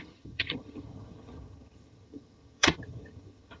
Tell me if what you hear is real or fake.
fake